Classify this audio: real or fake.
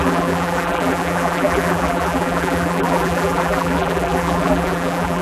fake